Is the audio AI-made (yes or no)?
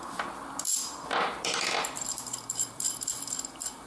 yes